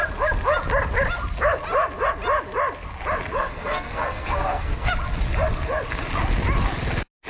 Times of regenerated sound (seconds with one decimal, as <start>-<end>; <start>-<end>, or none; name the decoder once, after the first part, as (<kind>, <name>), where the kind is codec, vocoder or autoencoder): 3.4-4.9 (codec, SNAC)